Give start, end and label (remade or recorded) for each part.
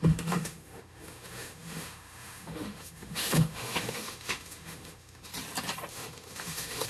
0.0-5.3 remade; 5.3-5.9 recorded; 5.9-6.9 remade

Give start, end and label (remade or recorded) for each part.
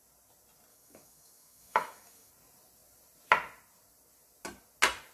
0.0-0.7 recorded; 0.7-2.3 remade; 2.3-5.1 recorded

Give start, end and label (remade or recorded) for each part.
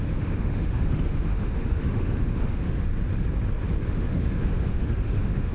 0.0-2.9 remade; 2.9-3.9 recorded; 3.9-5.5 remade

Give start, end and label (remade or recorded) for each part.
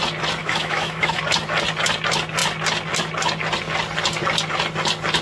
0.0-0.4 recorded; 0.4-1.2 remade; 1.2-5.2 recorded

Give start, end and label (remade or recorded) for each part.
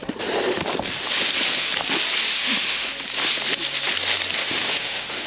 0.0-2.4 recorded; 2.4-2.9 remade; 2.9-4.4 recorded; 4.4-5.3 remade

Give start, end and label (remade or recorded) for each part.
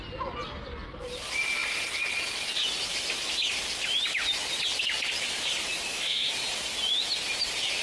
0.0-5.7 recorded; 5.7-6.3 remade; 6.3-7.8 recorded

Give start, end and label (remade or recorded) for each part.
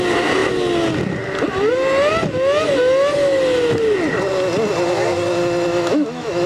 0.0-5.7 recorded; 5.7-6.5 remade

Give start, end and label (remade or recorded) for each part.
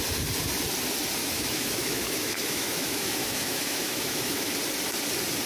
0.0-1.2 recorded; 1.2-4.5 remade; 4.5-5.5 recorded